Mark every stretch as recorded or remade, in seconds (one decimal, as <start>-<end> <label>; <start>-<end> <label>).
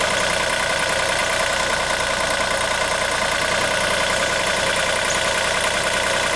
0.0-6.4 recorded